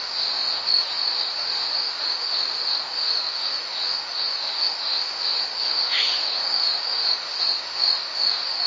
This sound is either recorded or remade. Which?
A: remade